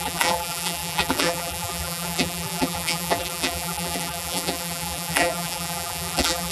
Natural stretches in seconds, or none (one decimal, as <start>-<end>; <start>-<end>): none